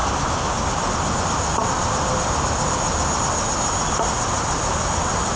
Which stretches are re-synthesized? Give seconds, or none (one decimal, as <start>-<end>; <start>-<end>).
none

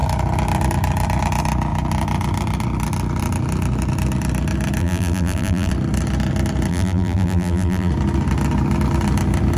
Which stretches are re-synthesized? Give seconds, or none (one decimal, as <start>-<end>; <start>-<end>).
4.8-5.7; 6.7-7.9

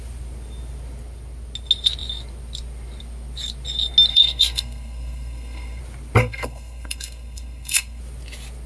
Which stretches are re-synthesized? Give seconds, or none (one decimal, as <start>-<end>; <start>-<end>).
4.1-5.8; 6.2-8.0

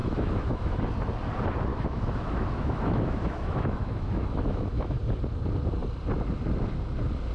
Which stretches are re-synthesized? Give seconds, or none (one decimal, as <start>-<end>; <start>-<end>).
0.0-0.8; 1.7-5.0

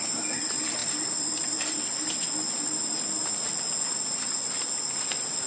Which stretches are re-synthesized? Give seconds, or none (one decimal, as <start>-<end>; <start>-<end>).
none

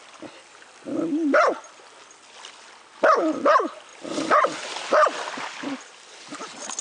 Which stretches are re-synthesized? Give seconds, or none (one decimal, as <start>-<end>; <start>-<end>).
none

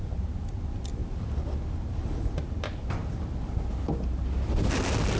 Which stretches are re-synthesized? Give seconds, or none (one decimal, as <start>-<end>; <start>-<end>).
none

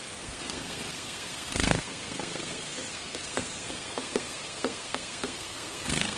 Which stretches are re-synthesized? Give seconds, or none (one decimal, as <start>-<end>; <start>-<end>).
0.0-6.2